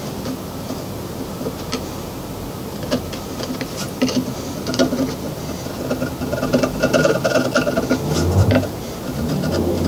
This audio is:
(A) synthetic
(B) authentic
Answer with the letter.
A